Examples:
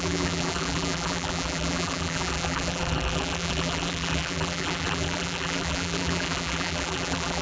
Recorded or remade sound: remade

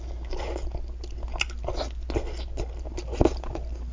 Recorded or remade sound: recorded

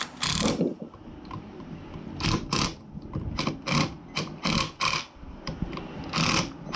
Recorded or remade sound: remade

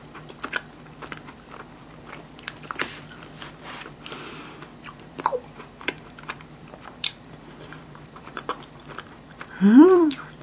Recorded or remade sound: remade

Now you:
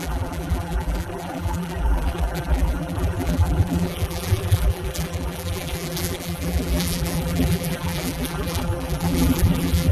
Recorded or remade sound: remade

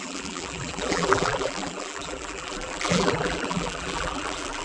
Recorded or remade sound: remade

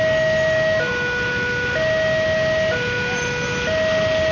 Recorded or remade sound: recorded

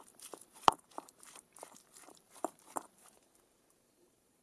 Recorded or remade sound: remade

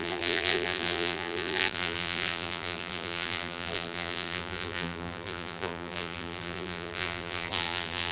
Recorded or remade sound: remade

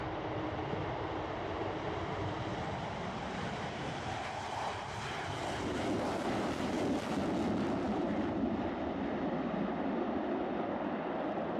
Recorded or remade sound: remade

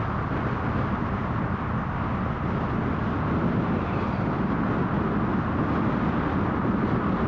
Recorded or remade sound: recorded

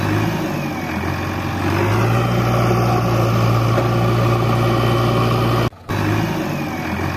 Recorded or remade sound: recorded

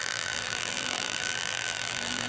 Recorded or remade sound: remade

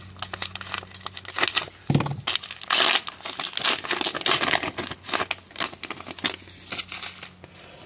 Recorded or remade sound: recorded